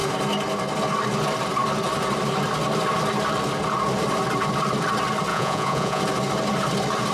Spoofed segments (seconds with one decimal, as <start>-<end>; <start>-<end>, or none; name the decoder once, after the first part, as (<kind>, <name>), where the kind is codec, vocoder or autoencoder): 5.3-6.0 (vocoder, Vocos)